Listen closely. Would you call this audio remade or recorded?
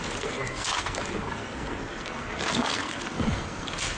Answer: remade